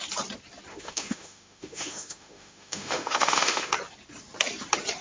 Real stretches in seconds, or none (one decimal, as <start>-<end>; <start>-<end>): 0.0-0.7; 3.7-5.0